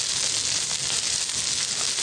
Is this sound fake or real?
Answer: real